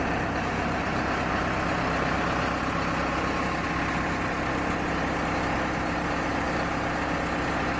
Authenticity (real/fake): real